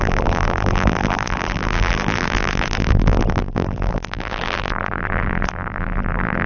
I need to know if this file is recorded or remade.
remade